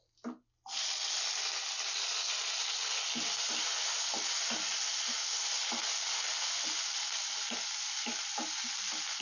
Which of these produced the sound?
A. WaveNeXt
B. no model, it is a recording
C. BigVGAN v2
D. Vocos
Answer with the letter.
B